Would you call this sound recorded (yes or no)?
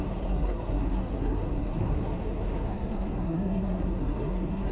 no